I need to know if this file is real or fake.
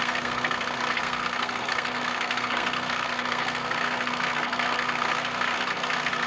fake